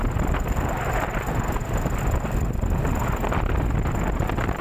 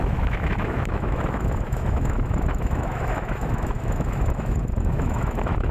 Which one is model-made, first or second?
second